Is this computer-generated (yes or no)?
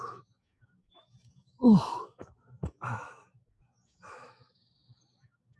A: yes